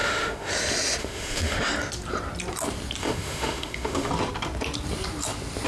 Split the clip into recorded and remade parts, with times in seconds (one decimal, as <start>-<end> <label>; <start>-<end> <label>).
0.0-0.5 remade; 0.5-1.0 recorded; 1.0-1.7 remade; 1.7-3.0 recorded; 3.0-4.1 remade; 4.1-5.7 recorded